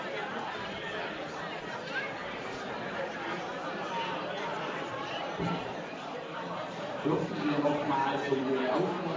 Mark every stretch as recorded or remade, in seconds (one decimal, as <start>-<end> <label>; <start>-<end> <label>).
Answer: 0.0-2.2 recorded; 2.2-3.2 remade; 3.2-4.5 recorded; 4.5-7.9 remade; 7.9-9.2 recorded